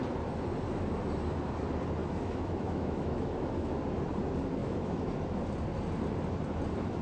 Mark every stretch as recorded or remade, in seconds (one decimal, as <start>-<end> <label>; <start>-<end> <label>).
0.0-2.0 recorded; 2.0-3.8 remade; 3.8-4.6 recorded; 4.6-5.1 remade; 5.1-7.0 recorded